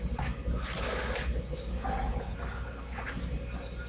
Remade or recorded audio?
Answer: recorded